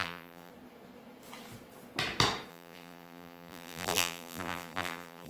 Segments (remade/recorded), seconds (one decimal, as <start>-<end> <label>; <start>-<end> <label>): 0.0-0.5 remade; 0.5-2.5 recorded; 2.5-5.3 remade